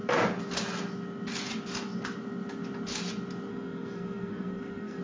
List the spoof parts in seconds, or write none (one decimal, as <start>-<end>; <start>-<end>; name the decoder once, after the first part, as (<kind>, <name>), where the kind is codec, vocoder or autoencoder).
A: 3.5-5.0 (codec, SNAC)

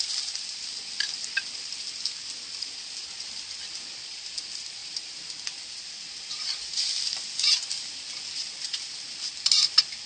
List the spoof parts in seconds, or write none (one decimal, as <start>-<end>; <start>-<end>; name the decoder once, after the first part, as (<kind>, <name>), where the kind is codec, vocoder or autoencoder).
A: none

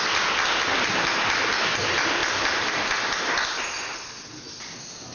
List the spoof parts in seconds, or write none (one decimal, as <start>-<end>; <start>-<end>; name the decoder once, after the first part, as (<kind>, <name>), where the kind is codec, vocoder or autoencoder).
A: none

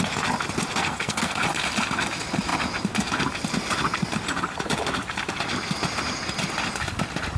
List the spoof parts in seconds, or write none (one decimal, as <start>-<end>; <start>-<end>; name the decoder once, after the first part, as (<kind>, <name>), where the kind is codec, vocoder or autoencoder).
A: 0.8-1.4 (codec, SNAC)